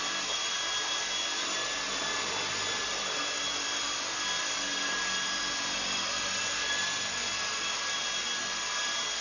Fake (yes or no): no